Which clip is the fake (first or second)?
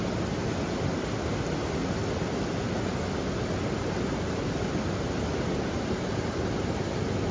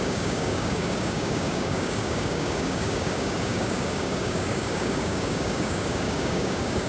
second